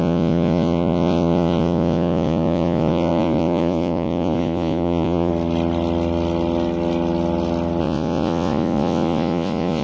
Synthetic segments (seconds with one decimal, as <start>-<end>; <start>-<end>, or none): 0.0-5.3; 7.8-9.8